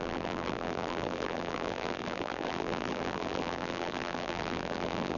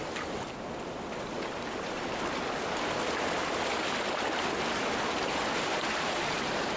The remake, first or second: first